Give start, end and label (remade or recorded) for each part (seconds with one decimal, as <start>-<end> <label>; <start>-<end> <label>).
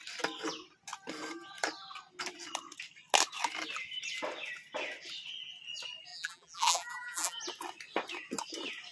0.0-6.1 recorded; 6.1-7.4 remade; 7.4-8.9 recorded